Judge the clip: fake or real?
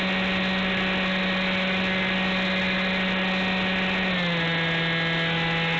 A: real